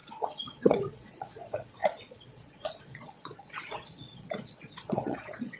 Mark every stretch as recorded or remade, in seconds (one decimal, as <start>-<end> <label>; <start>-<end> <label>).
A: 0.0-5.6 remade